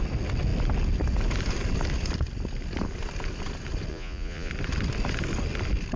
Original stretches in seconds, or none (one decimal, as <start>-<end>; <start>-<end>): 0.0-3.9; 4.5-6.0